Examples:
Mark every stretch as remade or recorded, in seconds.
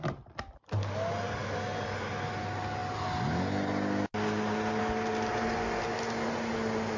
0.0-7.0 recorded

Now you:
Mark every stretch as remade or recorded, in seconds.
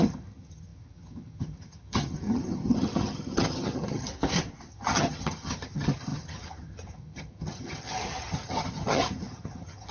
0.0-4.1 remade; 4.1-4.7 recorded; 4.7-9.9 remade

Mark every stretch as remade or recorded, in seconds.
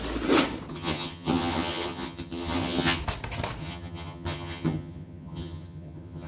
0.0-0.7 recorded; 0.7-3.0 remade; 3.0-3.6 recorded; 3.6-6.3 remade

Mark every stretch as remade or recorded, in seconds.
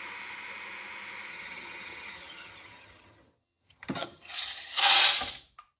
0.0-1.3 recorded; 1.3-4.8 remade; 4.8-5.8 recorded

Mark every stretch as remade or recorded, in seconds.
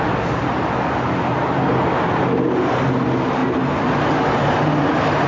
0.0-5.3 recorded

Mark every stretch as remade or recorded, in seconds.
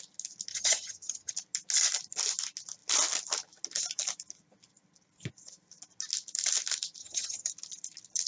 0.0-0.5 recorded; 0.5-1.3 remade; 1.3-7.0 recorded; 7.0-7.5 remade; 7.5-8.3 recorded